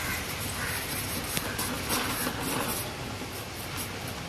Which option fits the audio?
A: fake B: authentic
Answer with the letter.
B